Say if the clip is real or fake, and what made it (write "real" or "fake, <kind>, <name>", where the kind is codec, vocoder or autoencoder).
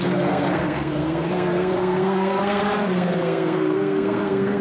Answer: fake, codec, SNAC